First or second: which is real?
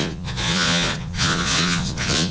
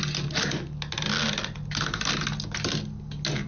second